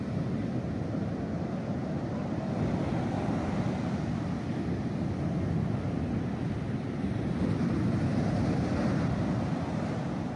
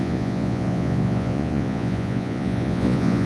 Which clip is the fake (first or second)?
second